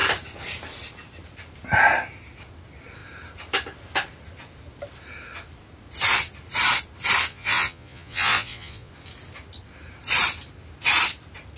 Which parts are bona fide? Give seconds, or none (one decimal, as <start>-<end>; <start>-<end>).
0.0-7.3; 8.9-11.6